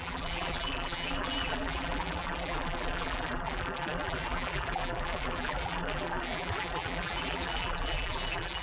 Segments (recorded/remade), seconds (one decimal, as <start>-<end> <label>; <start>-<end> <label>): 0.0-8.6 remade